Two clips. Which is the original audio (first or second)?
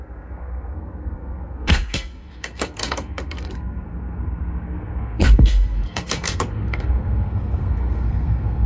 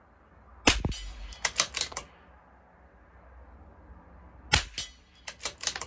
second